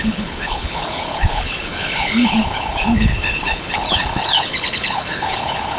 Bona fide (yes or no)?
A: no